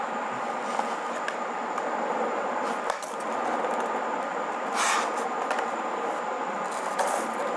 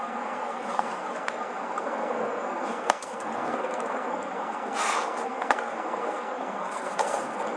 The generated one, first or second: second